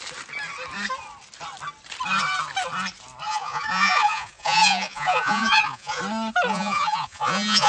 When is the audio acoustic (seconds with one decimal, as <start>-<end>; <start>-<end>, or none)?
0.0-3.3; 6.0-6.5

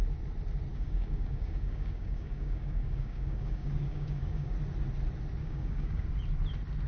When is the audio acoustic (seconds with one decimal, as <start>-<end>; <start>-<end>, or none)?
0.0-0.7; 4.5-5.4; 6.0-6.9

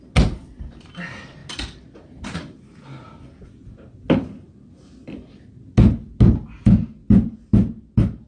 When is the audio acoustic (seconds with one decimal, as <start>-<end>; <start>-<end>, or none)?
0.0-8.3

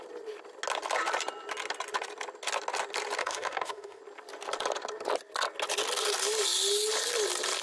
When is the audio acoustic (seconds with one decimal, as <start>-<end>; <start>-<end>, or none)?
0.0-3.2; 4.0-7.6

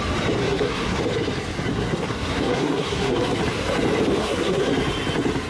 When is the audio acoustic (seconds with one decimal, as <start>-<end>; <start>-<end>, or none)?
0.0-0.4; 1.0-1.7; 3.4-4.2; 4.7-5.5

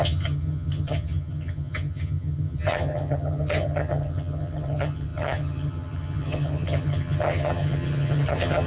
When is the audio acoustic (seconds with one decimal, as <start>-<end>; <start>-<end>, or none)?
none